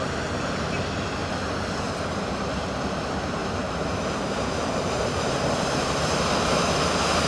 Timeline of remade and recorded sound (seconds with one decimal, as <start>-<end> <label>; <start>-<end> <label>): 0.0-1.2 remade; 1.2-2.2 recorded; 2.2-3.4 remade; 3.4-4.1 recorded; 4.1-7.3 remade